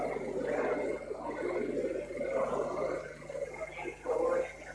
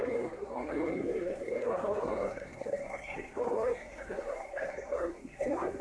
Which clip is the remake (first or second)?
second